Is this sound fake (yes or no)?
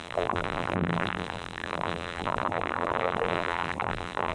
yes